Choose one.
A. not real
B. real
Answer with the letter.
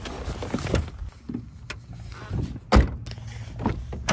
B